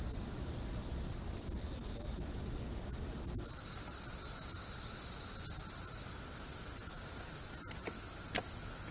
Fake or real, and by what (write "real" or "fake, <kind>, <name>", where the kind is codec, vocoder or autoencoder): real